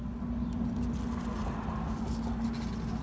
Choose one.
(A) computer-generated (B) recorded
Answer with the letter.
B